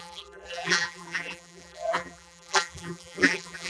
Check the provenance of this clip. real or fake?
fake